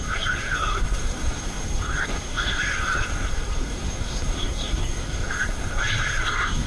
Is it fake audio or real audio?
fake